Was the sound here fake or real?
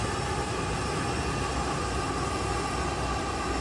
real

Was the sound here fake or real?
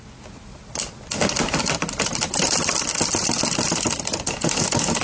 real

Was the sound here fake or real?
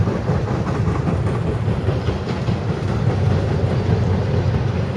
fake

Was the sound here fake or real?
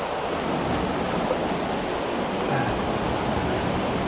real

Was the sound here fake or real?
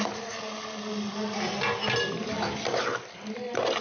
real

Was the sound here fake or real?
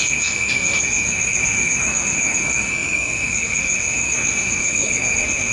fake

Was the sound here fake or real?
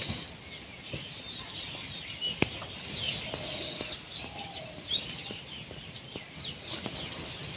real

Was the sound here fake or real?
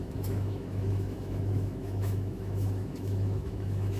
fake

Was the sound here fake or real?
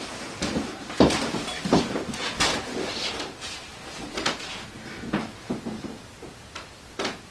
real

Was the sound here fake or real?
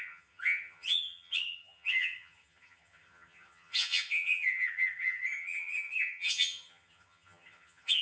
fake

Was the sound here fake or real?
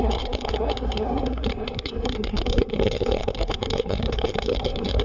fake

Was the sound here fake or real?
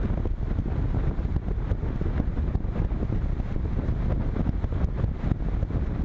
real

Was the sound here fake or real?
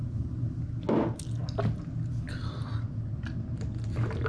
real